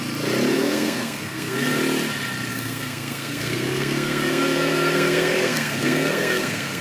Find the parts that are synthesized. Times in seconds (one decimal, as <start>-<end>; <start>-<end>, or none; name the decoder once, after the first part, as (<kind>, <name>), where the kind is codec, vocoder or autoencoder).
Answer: 0.5-1.8 (codec, SNAC); 2.5-6.8